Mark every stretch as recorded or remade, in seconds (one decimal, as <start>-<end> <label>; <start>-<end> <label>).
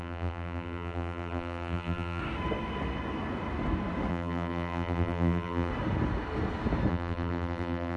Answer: 0.0-2.2 remade; 2.2-4.1 recorded; 4.1-5.7 remade; 5.7-6.9 recorded; 6.9-8.0 remade